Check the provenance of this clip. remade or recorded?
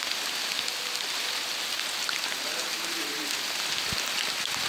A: recorded